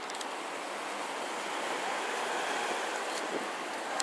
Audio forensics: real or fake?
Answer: real